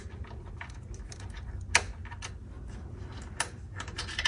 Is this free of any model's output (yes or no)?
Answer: yes